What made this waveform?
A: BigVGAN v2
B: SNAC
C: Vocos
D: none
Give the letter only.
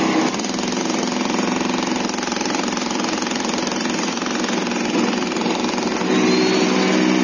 D